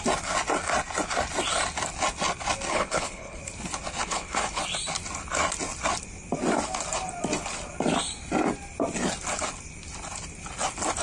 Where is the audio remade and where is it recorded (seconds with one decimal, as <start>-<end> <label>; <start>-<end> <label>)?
0.0-2.7 recorded; 2.7-3.4 remade; 3.4-4.0 recorded; 4.0-4.6 remade; 4.6-11.0 recorded